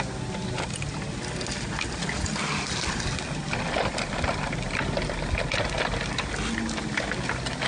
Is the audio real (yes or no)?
yes